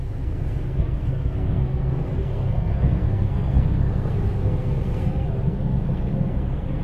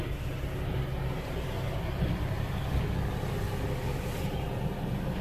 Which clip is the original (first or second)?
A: second